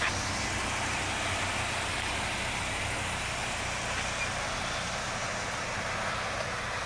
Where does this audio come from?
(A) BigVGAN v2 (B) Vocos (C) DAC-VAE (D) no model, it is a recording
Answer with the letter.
D